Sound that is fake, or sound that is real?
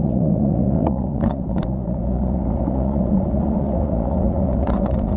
fake